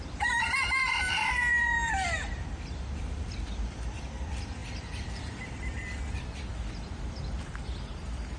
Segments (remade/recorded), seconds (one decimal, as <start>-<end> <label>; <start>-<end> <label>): 0.0-8.4 remade